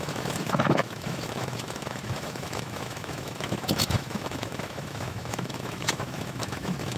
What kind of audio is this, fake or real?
fake